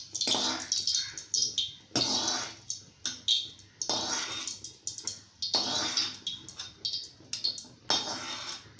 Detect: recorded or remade recorded